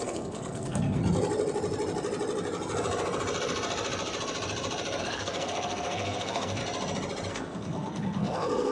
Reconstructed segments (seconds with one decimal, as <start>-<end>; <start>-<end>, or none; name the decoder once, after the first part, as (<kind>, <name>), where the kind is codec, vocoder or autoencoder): 0.0-1.0 (codec, SNAC); 5.0-6.6; 7.3-8.7